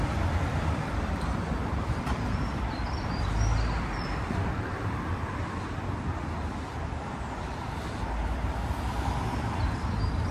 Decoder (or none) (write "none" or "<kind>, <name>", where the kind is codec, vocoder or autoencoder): vocoder, BigVGAN v2